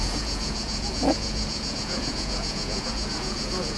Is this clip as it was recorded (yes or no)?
no